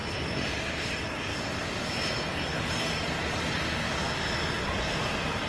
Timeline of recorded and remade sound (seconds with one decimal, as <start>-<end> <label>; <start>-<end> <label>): 0.0-2.5 recorded; 2.5-5.5 remade